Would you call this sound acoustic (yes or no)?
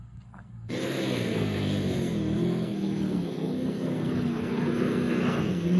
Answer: no